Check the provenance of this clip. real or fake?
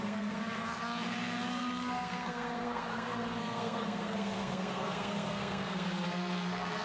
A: fake